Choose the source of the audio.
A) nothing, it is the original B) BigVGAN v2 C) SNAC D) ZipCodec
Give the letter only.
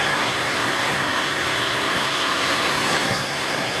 C